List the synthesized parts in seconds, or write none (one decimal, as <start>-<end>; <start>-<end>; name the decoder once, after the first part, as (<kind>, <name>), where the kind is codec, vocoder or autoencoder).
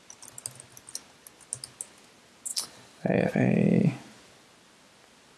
2.5-3.3 (vocoder, BigVGAN v2)